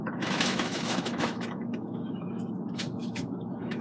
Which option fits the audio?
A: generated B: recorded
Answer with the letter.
A